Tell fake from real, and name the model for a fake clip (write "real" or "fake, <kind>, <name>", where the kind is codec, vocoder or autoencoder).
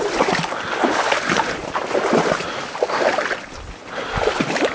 real